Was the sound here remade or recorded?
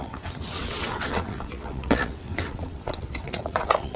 remade